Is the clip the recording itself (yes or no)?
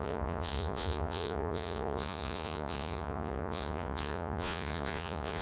no